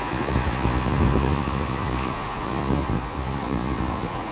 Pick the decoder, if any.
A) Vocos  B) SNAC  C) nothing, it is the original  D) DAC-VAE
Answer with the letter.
A